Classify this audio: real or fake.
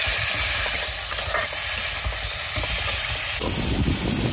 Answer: real